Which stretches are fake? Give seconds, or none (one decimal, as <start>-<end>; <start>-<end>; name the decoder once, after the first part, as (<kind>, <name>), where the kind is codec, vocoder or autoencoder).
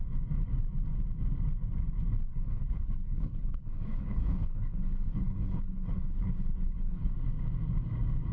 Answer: 2.3-7.1 (codec, HILCodec)